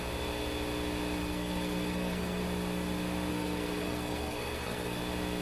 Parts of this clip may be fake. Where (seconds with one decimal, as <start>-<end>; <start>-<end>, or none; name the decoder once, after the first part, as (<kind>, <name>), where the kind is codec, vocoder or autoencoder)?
1.2-2.4 (codec, SNAC); 3.3-5.0

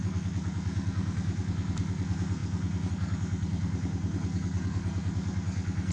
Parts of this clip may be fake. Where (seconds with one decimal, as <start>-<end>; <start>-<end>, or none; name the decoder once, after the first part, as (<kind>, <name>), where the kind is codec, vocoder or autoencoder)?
0.0-5.9 (codec, SNAC)

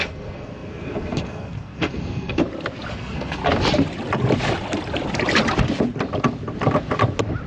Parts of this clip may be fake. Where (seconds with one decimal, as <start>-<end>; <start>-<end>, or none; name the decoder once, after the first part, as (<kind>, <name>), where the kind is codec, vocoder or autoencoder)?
0.0-2.4 (codec, SNAC); 2.9-3.4